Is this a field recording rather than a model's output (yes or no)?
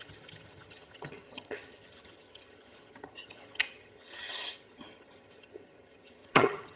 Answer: no